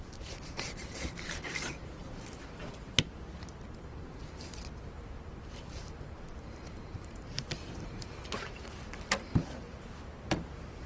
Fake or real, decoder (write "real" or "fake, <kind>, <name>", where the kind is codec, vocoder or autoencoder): fake, vocoder, BigVGAN v2